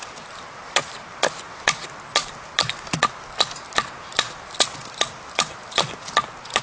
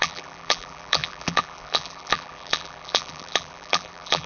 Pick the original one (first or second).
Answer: first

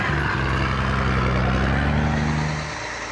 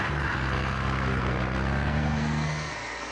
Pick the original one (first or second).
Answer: first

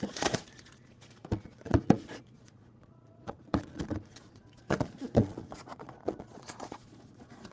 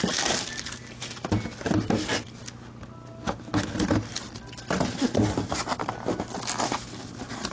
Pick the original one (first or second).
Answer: second